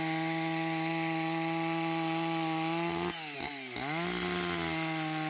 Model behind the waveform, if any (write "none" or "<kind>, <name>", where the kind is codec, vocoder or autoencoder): none